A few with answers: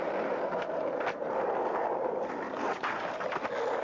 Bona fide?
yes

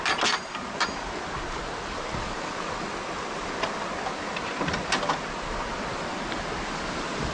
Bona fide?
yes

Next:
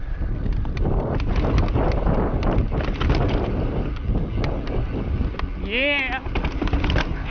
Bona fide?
yes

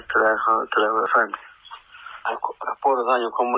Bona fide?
no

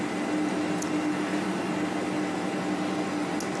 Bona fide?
yes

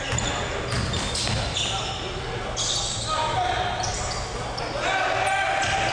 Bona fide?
yes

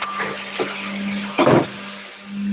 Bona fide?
yes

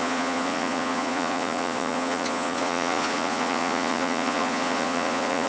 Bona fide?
no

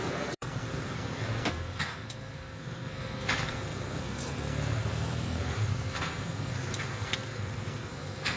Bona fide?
no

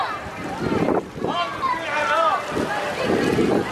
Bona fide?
yes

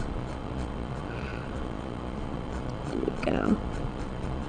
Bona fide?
no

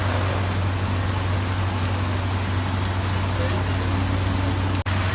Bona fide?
yes